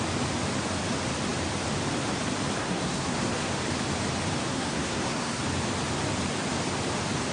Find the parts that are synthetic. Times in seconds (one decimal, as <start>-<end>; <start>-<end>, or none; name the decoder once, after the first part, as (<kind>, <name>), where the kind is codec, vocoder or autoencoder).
2.6-3.5 (codec, SNAC); 4.5-5.4